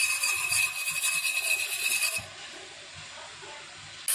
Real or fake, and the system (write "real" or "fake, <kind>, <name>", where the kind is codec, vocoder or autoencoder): real